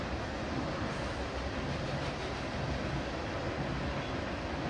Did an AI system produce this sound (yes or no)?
no